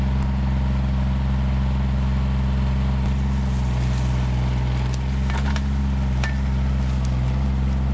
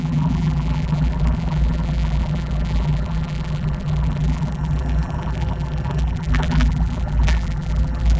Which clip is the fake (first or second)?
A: second